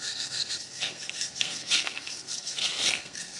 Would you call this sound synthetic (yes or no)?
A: yes